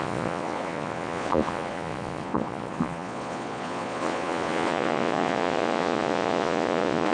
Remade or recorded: remade